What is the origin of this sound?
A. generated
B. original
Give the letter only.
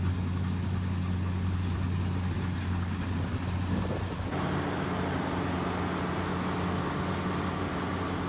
B